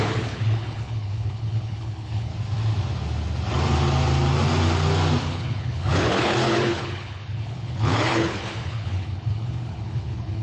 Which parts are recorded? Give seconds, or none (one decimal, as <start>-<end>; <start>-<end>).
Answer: 2.3-5.2